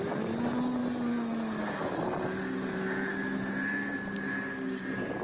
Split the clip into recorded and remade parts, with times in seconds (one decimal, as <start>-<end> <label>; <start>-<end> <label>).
0.0-5.2 recorded